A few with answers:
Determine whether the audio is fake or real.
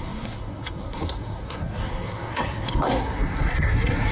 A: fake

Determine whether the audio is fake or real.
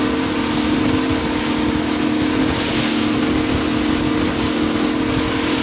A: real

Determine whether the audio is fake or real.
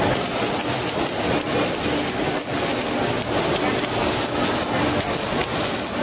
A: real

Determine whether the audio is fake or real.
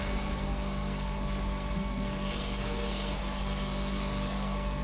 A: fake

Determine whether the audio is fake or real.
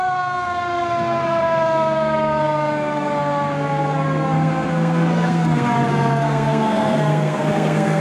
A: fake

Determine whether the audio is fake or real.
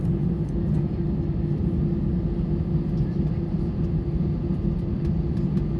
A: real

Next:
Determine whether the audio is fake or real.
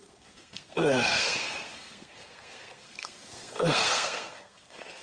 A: fake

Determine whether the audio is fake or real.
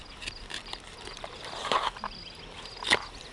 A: real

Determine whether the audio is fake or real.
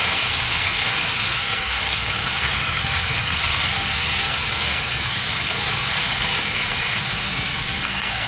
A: fake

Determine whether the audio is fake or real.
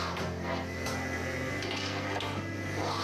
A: fake